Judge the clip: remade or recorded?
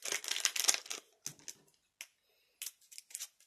recorded